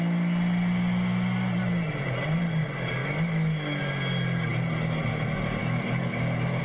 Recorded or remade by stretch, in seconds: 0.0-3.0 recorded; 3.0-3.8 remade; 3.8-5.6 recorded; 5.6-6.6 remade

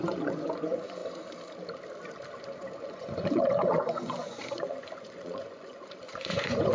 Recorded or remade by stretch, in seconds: 0.0-1.0 remade; 1.0-2.8 recorded; 2.8-6.7 remade

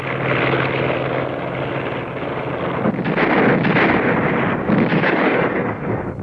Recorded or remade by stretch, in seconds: 0.0-4.9 recorded; 4.9-6.2 remade

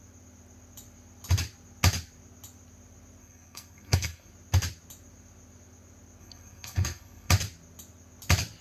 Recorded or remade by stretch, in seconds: 0.0-3.2 recorded; 3.2-4.3 remade; 4.3-6.2 recorded; 6.2-7.3 remade; 7.3-8.6 recorded